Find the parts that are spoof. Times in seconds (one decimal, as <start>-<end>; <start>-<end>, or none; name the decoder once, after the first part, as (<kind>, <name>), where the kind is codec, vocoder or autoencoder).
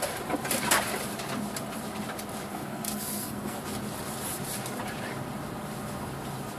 2.5-3.6 (codec, SNAC)